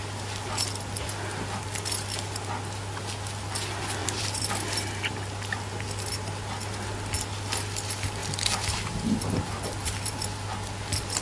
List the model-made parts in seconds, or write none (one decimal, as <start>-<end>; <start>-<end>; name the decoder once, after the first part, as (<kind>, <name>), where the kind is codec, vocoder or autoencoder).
4.0-4.5 (vocoder, BigVGAN v2)